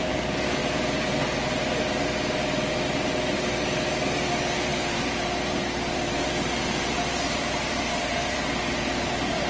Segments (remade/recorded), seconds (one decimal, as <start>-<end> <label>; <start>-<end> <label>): 0.0-0.6 remade; 0.6-2.7 recorded; 2.7-9.5 remade